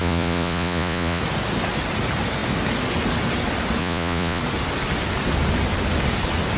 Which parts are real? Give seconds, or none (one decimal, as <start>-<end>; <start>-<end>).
1.2-3.8; 4.4-6.6